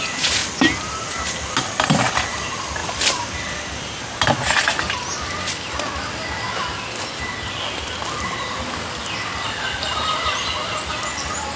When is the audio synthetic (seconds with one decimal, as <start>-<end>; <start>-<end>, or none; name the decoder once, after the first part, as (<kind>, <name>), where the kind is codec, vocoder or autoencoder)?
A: none